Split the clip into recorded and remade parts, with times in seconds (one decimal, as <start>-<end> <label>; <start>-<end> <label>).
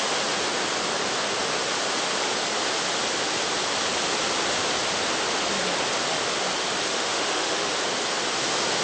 0.0-6.9 recorded; 6.9-7.7 remade; 7.7-8.8 recorded